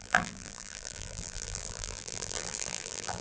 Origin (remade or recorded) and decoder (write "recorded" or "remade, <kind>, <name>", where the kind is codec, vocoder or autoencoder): remade, vocoder, BigVGAN v2